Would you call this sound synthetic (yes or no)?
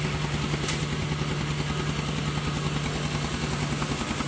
no